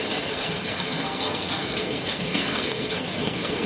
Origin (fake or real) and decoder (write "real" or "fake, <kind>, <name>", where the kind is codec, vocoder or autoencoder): fake, codec, SNAC